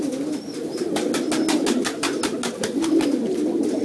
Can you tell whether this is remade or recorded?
recorded